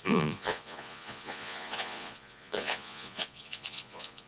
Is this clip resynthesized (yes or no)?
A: yes